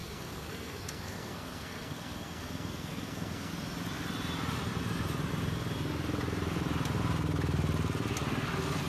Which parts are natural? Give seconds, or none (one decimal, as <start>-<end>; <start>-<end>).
3.5-8.9